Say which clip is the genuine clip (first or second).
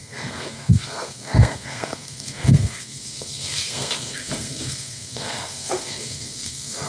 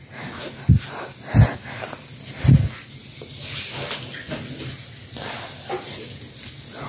second